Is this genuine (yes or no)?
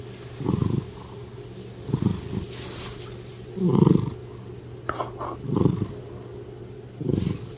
yes